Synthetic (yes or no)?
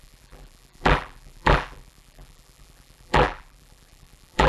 yes